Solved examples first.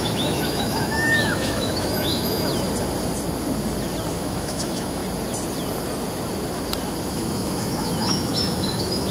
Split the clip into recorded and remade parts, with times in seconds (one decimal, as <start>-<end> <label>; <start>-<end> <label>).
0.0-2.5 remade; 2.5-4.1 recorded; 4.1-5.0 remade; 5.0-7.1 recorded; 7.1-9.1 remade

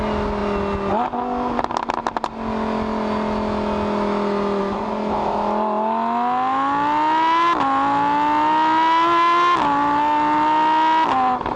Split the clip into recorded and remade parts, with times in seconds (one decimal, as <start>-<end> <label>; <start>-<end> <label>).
0.0-11.6 recorded

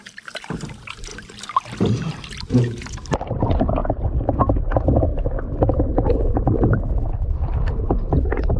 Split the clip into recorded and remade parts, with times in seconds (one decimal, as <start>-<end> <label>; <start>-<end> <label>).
0.0-1.1 remade; 1.1-2.4 recorded; 2.4-3.8 remade; 3.8-6.9 recorded; 6.9-8.6 remade

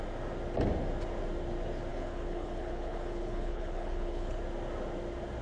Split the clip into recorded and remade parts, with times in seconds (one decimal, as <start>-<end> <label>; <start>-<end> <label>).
0.0-1.9 recorded; 1.9-4.4 remade; 4.4-5.4 recorded

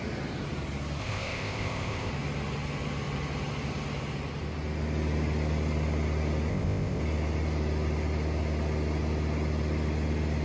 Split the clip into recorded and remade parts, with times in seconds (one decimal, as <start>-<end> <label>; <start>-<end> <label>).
0.0-1.0 recorded; 1.0-2.1 remade; 2.1-6.5 recorded; 6.5-7.0 remade; 7.0-10.4 recorded